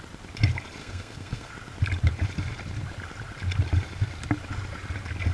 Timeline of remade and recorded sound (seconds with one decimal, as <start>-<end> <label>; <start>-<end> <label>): 0.0-0.8 recorded; 0.8-1.5 remade; 1.5-5.3 recorded